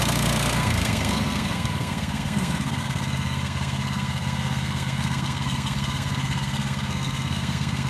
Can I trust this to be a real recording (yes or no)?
no